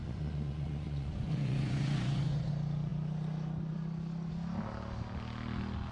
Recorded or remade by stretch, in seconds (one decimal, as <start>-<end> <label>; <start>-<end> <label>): 0.0-2.5 remade; 2.5-5.9 recorded